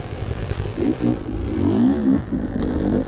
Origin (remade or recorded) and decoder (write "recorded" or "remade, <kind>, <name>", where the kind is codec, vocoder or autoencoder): remade, vocoder, BigVGAN v2